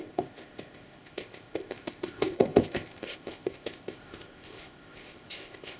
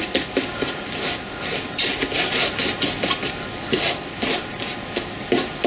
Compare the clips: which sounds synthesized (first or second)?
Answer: first